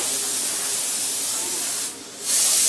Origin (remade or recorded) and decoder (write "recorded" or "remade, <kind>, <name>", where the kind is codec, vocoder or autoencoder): recorded